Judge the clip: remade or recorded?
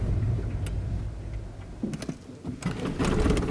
recorded